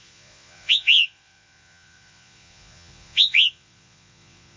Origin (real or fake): fake